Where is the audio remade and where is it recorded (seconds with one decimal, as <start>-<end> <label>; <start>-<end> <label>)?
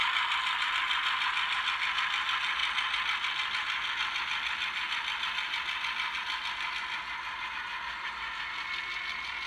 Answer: 0.0-0.7 remade; 0.7-9.5 recorded